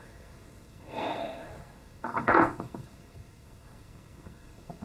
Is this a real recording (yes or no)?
no